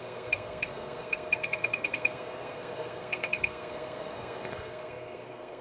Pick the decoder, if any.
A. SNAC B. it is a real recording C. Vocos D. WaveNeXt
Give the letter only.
A